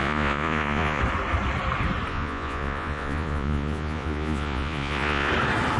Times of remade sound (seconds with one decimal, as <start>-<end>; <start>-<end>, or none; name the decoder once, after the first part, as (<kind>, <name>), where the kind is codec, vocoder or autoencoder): 0.0-1.0 (vocoder, Vocos); 2.1-5.3